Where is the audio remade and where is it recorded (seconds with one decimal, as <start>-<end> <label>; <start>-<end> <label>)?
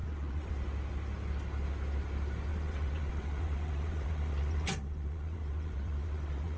0.0-0.5 remade; 0.5-2.5 recorded; 2.5-6.6 remade